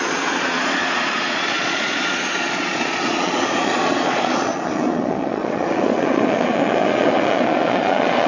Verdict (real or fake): fake